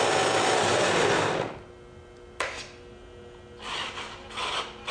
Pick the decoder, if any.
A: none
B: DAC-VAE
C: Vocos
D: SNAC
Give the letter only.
A